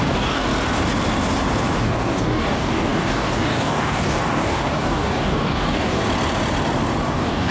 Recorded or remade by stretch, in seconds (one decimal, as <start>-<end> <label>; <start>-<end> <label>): 0.0-0.5 remade; 0.5-1.8 recorded; 1.8-6.0 remade; 6.0-7.1 recorded; 7.1-7.5 remade